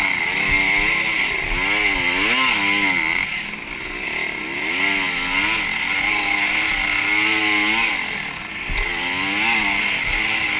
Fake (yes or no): no